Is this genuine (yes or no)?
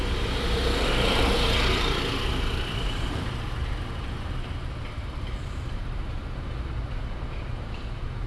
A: no